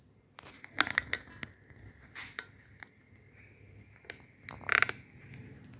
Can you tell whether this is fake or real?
real